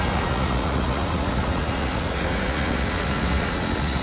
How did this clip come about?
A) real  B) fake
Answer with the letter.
B